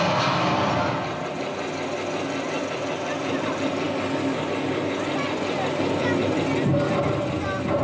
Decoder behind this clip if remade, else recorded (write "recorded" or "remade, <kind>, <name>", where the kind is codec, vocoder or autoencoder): recorded